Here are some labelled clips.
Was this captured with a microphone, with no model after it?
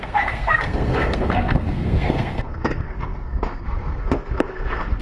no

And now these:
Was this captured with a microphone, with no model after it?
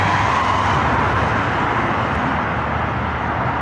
yes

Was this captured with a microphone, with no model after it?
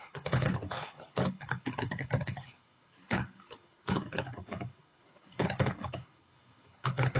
no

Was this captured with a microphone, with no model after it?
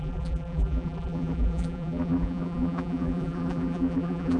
no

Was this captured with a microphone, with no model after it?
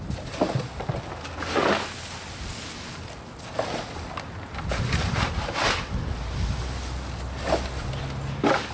yes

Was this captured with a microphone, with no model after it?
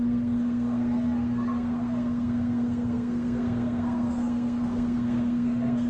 no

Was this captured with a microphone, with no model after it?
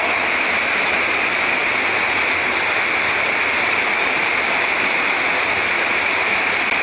yes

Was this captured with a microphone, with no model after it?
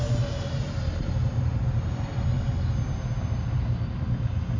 yes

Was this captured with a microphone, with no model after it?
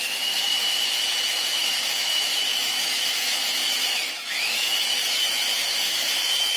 no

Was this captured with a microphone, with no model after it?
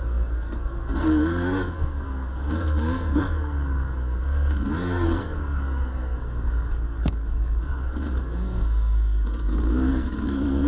no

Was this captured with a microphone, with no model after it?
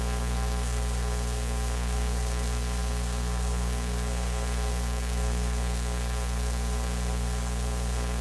no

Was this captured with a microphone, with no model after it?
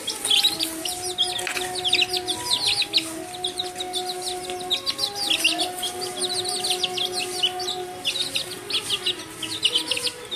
yes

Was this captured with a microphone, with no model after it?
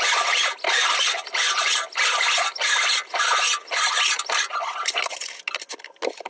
yes